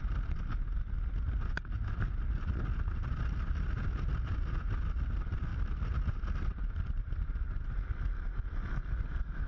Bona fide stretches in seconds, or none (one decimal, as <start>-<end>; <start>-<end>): 0.0-9.5